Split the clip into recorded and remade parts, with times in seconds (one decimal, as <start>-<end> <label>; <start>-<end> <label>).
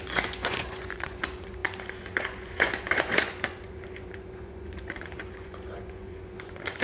0.0-6.8 remade